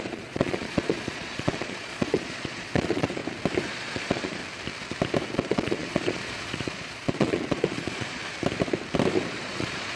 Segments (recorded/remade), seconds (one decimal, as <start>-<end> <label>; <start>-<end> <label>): 0.0-3.2 remade; 3.2-3.7 recorded; 3.7-4.4 remade; 4.4-5.3 recorded; 5.3-8.2 remade; 8.2-9.3 recorded; 9.3-10.0 remade